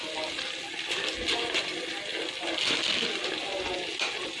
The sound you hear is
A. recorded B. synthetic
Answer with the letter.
A